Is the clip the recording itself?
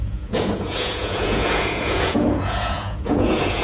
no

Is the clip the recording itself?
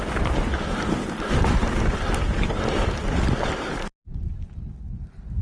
yes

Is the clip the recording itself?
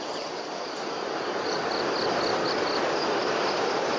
yes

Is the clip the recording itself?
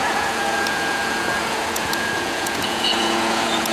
no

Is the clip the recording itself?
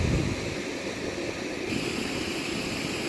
yes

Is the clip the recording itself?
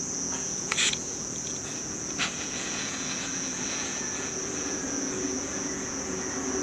no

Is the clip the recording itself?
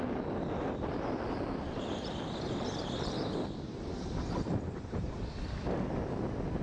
yes